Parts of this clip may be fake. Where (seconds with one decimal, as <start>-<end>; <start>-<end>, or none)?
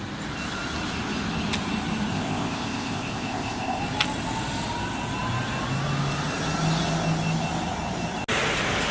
2.1-3.8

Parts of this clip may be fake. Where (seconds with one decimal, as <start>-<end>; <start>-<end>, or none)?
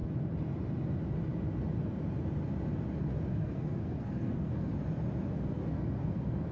3.3-4.7; 5.3-6.5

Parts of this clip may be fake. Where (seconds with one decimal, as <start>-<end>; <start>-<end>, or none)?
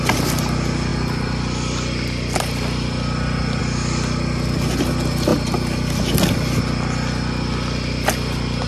none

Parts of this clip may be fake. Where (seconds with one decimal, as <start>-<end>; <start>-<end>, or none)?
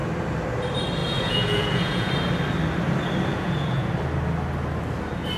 1.0-2.1; 3.3-3.9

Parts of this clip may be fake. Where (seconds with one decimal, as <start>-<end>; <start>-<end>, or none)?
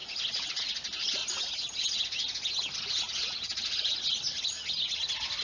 none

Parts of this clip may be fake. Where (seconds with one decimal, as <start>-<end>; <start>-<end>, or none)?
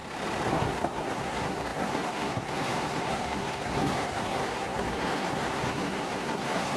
0.5-6.8